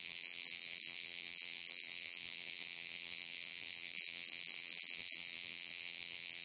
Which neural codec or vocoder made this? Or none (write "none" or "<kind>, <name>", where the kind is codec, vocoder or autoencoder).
vocoder, BigVGAN v2